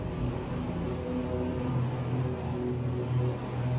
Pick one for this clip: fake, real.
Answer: real